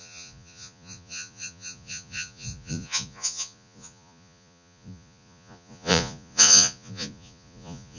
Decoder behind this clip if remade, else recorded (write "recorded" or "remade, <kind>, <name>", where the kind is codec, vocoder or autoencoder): remade, vocoder, Vocos